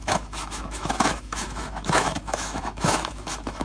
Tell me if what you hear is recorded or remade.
remade